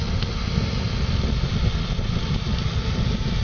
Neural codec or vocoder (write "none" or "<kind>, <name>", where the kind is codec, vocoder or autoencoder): none